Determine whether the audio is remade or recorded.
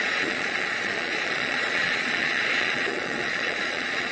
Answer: remade